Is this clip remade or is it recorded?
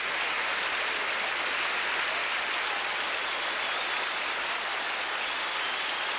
recorded